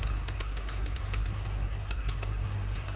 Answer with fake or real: fake